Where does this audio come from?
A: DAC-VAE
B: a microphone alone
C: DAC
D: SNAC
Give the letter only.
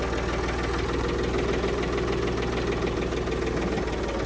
B